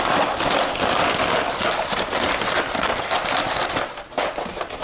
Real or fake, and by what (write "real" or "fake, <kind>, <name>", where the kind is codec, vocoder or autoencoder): real